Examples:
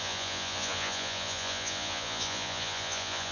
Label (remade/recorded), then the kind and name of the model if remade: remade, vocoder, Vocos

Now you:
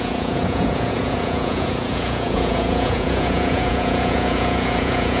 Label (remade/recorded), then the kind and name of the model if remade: remade, vocoder, Vocos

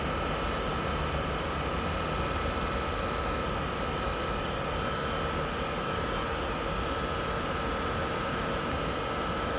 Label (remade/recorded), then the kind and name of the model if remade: recorded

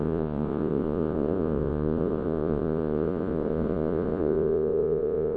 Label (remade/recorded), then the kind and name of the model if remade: remade, vocoder, Vocos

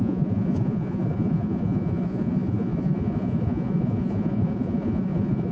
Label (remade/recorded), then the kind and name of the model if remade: remade, vocoder, Vocos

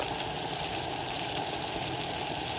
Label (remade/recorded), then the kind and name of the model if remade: recorded